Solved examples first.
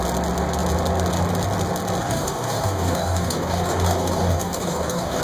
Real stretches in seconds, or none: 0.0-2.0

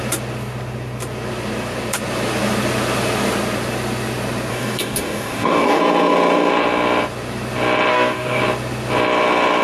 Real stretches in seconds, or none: 0.0-4.5; 5.8-7.9; 8.4-9.6

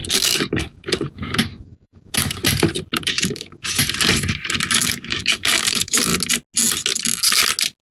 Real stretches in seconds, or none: 2.4-3.0; 3.8-4.7; 6.1-7.9

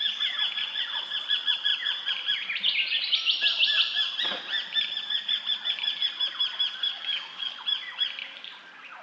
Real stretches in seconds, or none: 0.0-6.8; 7.5-9.0